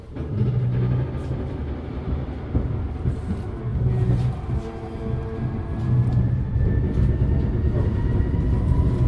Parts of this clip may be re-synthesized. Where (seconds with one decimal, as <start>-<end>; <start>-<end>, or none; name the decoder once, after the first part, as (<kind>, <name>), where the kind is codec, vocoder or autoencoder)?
none